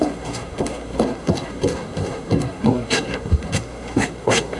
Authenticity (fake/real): fake